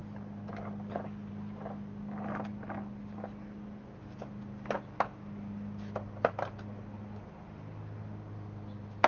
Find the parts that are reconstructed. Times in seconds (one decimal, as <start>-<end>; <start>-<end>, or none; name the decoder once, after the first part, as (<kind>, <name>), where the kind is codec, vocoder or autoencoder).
none